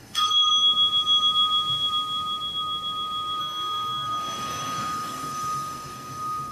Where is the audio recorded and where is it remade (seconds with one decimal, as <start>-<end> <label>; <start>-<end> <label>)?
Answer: 0.0-0.5 remade; 0.5-3.4 recorded; 3.4-6.5 remade